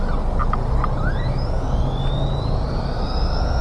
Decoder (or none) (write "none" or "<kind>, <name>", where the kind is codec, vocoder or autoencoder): none